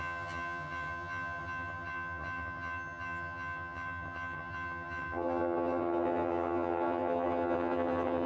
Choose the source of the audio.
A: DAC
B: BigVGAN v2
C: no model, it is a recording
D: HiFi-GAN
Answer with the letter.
D